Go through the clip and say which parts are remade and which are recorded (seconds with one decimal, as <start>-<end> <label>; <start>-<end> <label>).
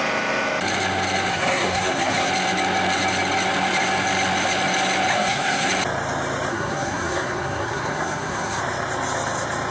0.0-1.3 recorded; 1.3-2.3 remade; 2.3-5.1 recorded; 5.1-5.7 remade; 5.7-6.5 recorded; 6.5-8.6 remade; 8.6-9.7 recorded